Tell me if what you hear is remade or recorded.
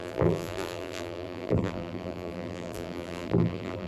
remade